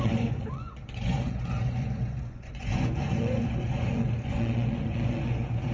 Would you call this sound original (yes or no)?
no